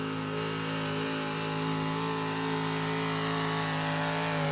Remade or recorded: recorded